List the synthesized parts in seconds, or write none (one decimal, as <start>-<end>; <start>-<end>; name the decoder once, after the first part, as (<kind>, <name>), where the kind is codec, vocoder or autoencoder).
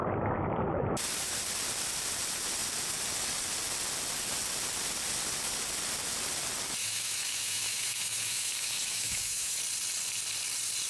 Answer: 6.8-9.6 (autoencoder, DAC-VAE)